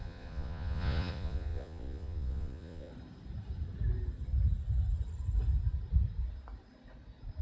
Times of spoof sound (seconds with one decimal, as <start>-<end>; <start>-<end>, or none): 0.0-2.9